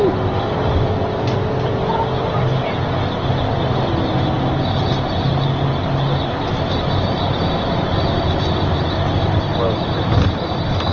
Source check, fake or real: real